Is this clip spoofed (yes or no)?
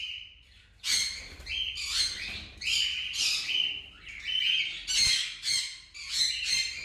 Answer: no